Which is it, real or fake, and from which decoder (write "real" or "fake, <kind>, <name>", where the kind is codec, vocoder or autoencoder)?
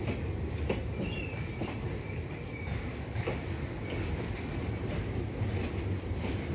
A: real